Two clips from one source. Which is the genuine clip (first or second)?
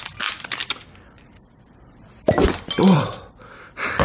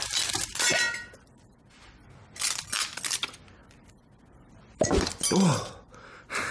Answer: second